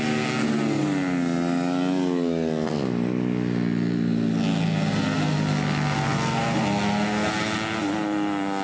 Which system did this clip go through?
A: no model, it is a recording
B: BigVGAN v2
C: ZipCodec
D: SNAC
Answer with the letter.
A